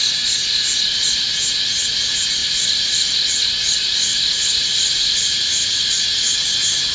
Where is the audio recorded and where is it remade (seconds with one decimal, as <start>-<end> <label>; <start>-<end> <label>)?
0.0-2.4 recorded; 2.4-3.1 remade; 3.1-4.1 recorded; 4.1-6.0 remade; 6.0-6.9 recorded